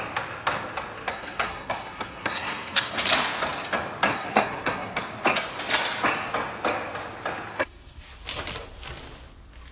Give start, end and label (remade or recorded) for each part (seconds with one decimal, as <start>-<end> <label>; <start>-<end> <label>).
0.0-1.1 recorded; 1.1-2.9 remade; 2.9-4.1 recorded; 4.1-5.0 remade; 5.0-7.5 recorded; 7.5-8.0 remade; 8.0-9.7 recorded